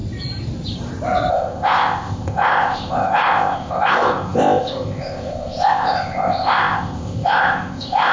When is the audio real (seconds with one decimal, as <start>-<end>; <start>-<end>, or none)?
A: 0.0-1.3